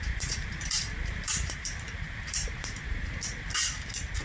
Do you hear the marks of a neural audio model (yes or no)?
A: yes